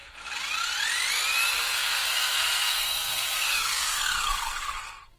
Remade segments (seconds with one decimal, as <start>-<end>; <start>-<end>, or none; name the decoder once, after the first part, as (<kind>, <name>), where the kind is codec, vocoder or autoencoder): 1.5-5.2 (codec, SNAC)